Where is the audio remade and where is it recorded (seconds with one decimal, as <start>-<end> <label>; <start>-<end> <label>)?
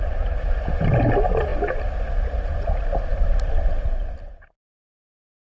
0.0-5.4 recorded